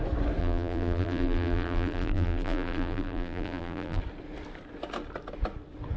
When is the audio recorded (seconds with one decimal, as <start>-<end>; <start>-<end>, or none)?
0.0-0.4; 4.0-6.0